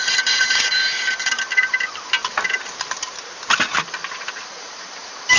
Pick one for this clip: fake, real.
fake